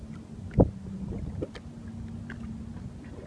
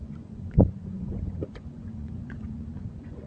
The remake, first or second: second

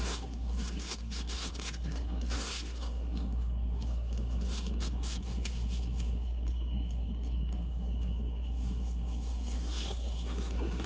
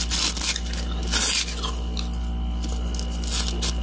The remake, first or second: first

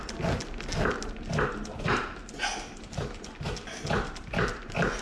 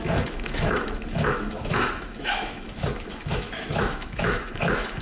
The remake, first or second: second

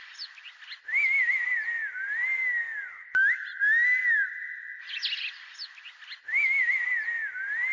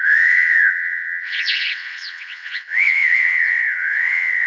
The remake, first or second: second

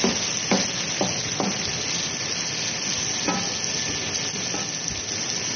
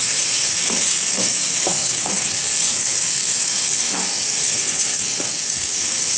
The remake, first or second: second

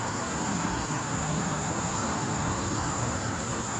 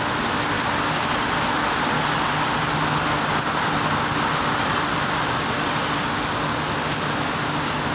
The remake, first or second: first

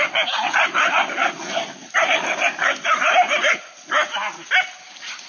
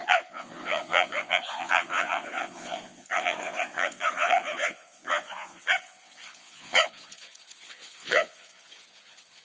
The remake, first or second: second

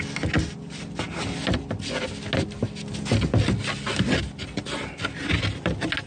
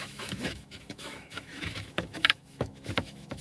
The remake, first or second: second